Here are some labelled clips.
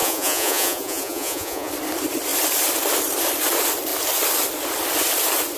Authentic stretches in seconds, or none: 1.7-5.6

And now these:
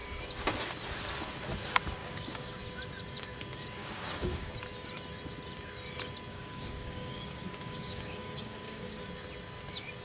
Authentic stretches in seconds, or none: 0.0-2.0; 2.6-3.8; 4.5-6.3; 9.0-10.0

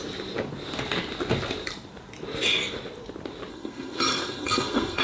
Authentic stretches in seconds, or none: 0.0-3.5

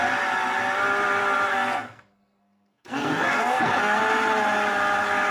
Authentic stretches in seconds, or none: 0.0-1.5; 4.0-5.3